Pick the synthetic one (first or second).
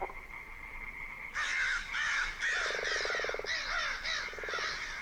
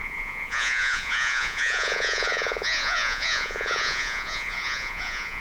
second